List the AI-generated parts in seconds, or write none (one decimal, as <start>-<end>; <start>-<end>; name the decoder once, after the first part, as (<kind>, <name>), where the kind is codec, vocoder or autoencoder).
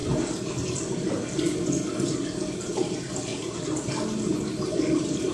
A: none